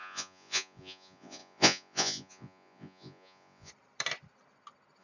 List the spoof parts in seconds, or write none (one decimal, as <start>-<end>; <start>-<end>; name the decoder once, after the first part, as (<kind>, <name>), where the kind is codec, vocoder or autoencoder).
0.0-3.7 (vocoder, Vocos)